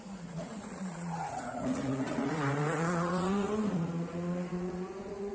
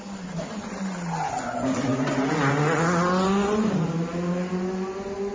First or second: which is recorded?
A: second